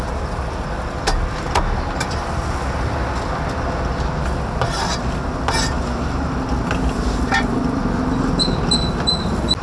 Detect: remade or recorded recorded